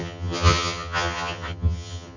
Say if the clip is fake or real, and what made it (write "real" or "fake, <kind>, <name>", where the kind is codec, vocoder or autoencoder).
fake, vocoder, HiFi-GAN